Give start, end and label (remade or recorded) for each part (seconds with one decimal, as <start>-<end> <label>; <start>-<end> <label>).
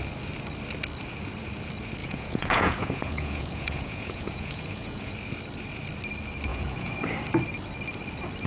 0.0-2.0 recorded; 2.0-5.1 remade; 5.1-6.5 recorded; 6.5-7.0 remade; 7.0-8.5 recorded